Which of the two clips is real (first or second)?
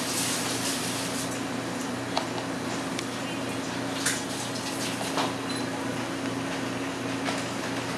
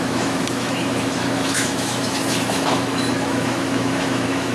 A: first